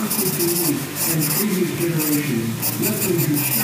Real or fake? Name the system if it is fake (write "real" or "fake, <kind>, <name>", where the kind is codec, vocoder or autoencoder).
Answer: real